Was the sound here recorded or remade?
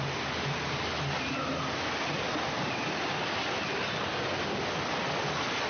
recorded